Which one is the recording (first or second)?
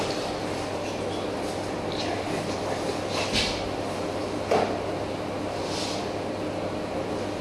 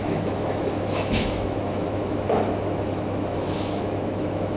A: first